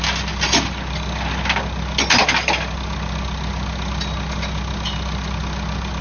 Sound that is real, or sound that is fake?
real